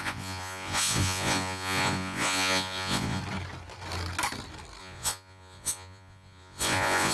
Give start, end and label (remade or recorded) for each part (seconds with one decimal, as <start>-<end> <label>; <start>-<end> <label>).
0.0-3.2 remade; 3.2-4.8 recorded; 4.8-7.1 remade